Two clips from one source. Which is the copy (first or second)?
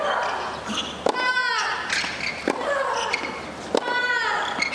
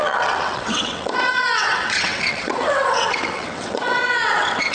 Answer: second